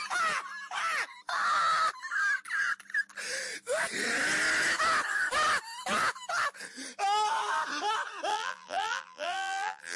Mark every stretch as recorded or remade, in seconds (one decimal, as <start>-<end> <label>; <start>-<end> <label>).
0.0-8.3 recorded; 8.3-10.0 remade